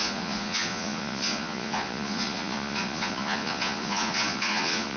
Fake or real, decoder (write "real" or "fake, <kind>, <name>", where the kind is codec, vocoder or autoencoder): fake, vocoder, Vocos